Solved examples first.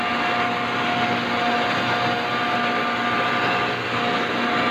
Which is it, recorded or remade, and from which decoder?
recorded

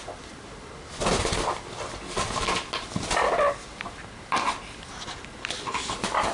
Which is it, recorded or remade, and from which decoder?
recorded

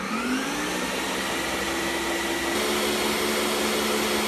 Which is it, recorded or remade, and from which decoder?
recorded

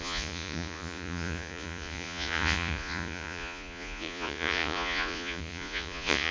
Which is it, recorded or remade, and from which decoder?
remade, vocoder, Vocos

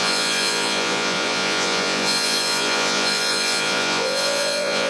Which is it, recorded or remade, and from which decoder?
remade, vocoder, Vocos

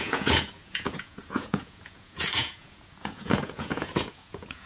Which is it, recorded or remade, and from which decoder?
remade, vocoder, Vocos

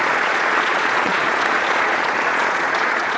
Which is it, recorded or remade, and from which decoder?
remade, vocoder, Vocos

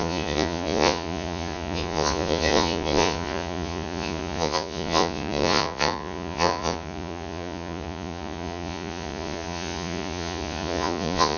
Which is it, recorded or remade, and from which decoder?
remade, vocoder, Vocos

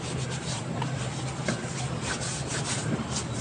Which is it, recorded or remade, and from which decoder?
recorded